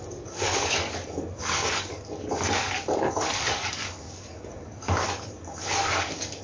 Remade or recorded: remade